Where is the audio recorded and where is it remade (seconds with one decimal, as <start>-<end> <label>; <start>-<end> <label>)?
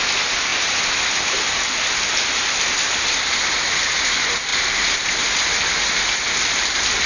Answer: 0.0-0.5 recorded; 0.5-3.8 remade; 3.8-4.5 recorded; 4.5-7.1 remade